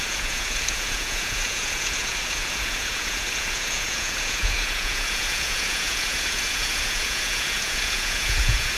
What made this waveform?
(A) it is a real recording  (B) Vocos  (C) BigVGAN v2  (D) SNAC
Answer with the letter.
B